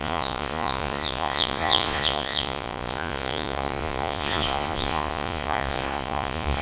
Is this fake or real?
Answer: fake